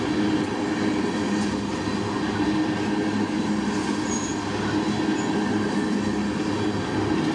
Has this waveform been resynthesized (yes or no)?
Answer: no